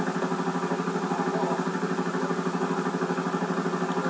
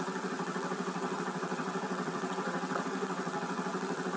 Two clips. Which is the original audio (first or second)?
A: first